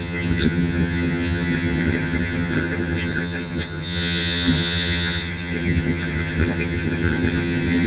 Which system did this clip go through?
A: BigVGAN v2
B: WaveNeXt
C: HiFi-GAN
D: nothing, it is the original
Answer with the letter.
C